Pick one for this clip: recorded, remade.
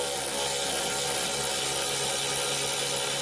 recorded